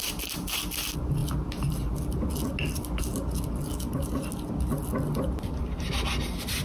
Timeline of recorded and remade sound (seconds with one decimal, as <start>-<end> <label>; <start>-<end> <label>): 0.0-6.6 recorded